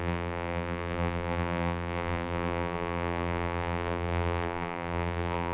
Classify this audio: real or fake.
fake